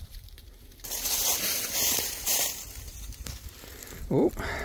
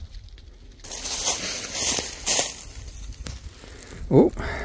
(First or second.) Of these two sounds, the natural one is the second